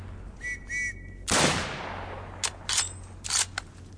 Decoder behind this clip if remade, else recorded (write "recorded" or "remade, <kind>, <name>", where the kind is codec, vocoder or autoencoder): recorded